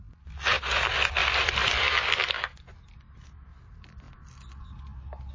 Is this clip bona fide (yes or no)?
yes